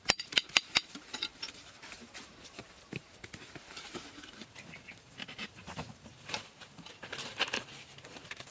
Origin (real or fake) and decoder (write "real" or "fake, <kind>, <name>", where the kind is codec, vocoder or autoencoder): fake, vocoder, BigVGAN v2